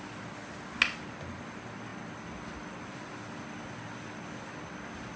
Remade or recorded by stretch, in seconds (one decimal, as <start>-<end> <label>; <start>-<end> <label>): 0.0-5.2 recorded